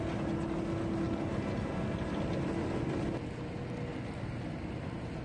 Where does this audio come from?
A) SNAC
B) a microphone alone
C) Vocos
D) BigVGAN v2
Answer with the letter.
B